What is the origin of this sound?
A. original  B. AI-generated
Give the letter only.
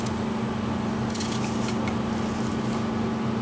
A